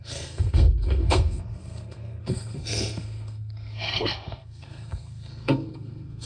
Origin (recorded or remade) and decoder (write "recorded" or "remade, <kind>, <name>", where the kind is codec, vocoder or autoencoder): remade, codec, SNAC